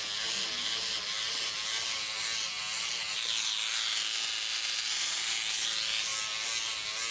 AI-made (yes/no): no